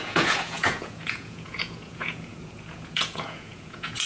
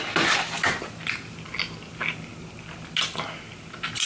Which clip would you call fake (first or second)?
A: first